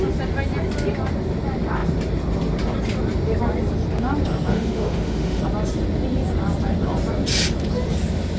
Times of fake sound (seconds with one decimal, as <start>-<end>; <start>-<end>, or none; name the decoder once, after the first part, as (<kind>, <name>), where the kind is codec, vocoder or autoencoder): 4.5-5.4 (autoencoder, DAC-VAE)